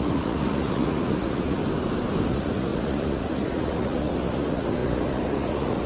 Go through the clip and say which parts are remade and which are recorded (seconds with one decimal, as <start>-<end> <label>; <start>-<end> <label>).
0.0-1.6 remade; 1.6-2.3 recorded; 2.3-5.9 remade